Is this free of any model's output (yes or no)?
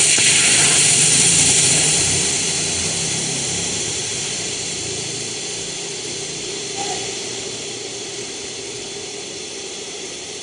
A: no